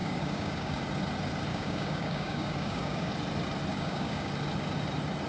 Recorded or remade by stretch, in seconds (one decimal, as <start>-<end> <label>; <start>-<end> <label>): 0.0-0.8 remade; 0.8-1.5 recorded; 1.5-3.1 remade; 3.1-3.7 recorded; 3.7-4.3 remade; 4.3-5.3 recorded